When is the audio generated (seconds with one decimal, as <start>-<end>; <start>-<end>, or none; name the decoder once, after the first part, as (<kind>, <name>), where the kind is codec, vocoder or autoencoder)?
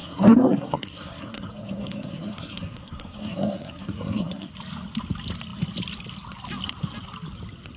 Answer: 0.0-4.5 (codec, SNAC)